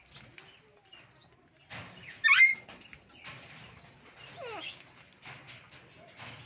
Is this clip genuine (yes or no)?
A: yes